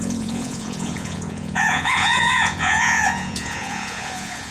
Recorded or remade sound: remade